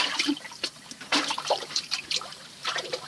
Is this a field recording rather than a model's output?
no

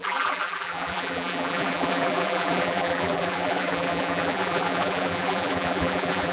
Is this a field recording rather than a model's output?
no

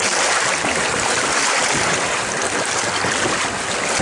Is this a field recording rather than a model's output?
yes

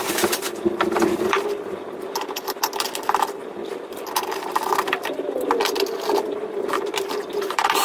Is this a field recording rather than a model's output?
no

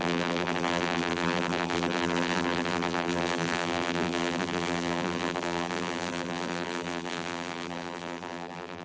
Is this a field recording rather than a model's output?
no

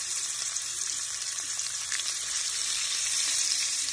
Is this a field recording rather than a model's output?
no